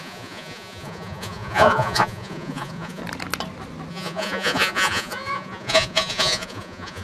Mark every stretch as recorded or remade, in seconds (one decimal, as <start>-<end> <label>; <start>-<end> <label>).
0.0-3.0 remade; 3.0-3.9 recorded; 3.9-7.0 remade